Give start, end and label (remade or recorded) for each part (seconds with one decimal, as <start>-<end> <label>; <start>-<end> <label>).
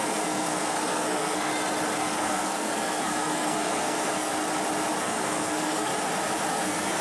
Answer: 0.0-1.5 remade; 1.5-2.0 recorded; 2.0-4.3 remade; 4.3-5.0 recorded; 5.0-5.9 remade; 5.9-6.5 recorded; 6.5-7.0 remade